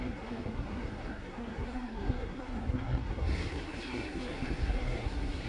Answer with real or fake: fake